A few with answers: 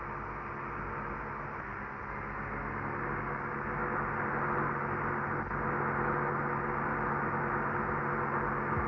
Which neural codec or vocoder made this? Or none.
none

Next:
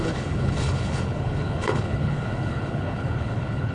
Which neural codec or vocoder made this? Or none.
codec, HILCodec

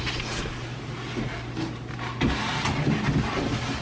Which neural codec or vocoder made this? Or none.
none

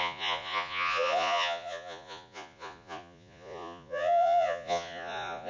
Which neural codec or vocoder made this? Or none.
vocoder, Vocos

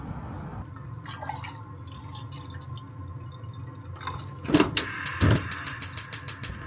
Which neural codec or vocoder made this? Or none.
none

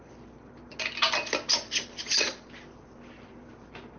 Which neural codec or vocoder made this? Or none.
none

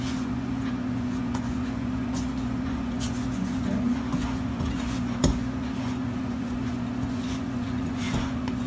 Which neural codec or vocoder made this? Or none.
vocoder, Vocos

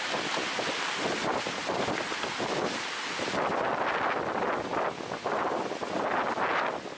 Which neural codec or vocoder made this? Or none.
none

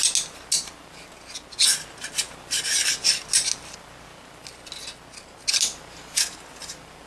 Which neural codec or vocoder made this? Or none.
none